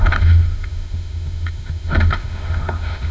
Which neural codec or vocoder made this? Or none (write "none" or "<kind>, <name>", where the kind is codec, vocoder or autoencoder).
autoencoder, DAC-VAE